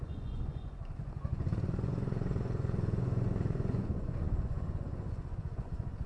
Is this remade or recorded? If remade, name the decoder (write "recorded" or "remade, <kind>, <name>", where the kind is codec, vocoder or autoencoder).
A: remade, vocoder, Vocos